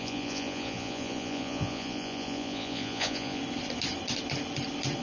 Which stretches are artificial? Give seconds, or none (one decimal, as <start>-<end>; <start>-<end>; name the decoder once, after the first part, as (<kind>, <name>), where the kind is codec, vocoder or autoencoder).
0.0-3.4 (vocoder, Vocos)